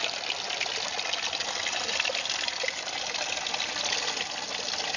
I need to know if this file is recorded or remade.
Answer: recorded